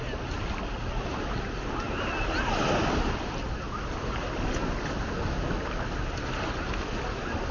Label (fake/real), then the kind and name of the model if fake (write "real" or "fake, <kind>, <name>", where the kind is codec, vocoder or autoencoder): real